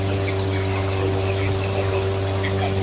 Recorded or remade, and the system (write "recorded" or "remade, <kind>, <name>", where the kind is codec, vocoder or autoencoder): recorded